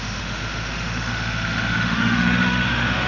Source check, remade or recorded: remade